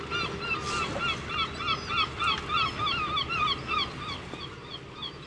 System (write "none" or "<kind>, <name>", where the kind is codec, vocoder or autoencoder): none